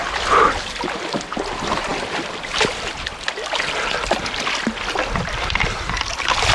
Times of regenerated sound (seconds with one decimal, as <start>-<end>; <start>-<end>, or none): none